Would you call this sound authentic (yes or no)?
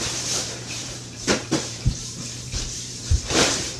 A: no